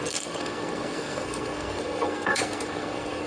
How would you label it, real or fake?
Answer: fake